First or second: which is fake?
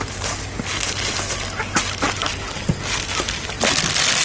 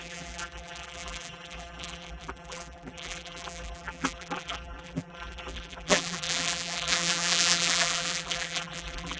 second